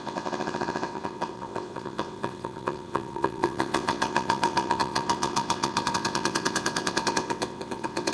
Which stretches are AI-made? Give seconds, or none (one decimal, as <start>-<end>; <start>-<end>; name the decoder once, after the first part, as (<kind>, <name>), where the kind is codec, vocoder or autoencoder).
0.0-8.1 (vocoder, WaveNeXt)